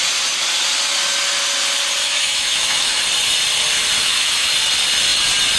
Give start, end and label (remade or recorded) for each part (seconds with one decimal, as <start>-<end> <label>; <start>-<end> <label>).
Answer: 0.0-2.0 recorded; 2.0-3.0 remade; 3.0-4.0 recorded; 4.0-4.5 remade; 4.5-5.6 recorded